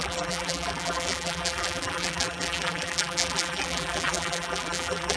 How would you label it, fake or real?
fake